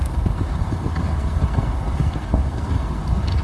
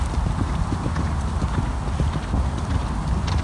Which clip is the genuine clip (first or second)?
second